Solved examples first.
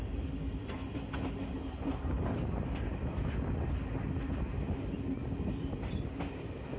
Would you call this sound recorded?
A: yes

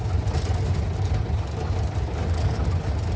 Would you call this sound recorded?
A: yes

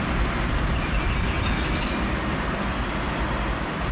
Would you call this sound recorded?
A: yes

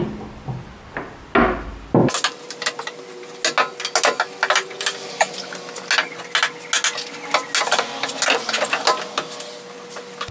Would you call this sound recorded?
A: yes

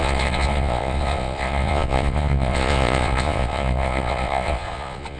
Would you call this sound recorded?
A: no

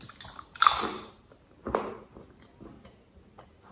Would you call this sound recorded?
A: yes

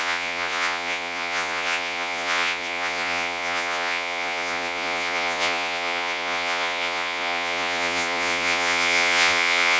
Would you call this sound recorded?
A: no